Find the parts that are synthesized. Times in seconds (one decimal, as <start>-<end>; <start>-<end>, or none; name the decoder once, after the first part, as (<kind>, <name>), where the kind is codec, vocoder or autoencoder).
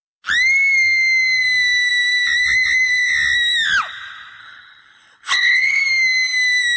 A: 4.4-5.8 (codec, HILCodec)